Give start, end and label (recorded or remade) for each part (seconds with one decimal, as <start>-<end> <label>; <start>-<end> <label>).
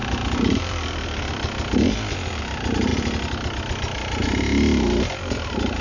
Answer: 0.0-5.8 recorded